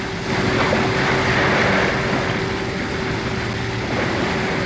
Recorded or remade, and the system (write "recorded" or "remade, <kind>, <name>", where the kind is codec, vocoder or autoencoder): recorded